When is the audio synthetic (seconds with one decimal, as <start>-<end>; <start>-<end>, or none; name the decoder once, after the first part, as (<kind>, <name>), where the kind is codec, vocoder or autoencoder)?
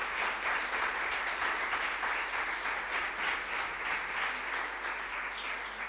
none